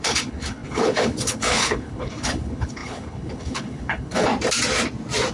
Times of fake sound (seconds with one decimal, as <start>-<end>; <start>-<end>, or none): 0.0-4.3